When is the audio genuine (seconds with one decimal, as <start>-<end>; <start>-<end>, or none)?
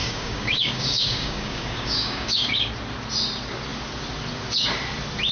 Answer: 2.7-5.3